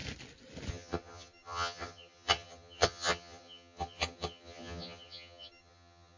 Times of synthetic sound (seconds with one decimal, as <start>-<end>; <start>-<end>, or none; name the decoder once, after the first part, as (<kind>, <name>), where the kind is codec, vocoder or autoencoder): 0.7-6.2 (vocoder, HiFi-GAN)